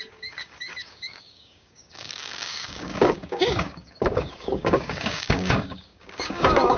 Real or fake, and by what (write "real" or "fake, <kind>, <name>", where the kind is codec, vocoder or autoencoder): fake, codec, DAC